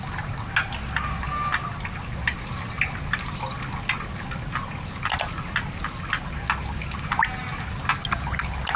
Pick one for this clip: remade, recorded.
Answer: recorded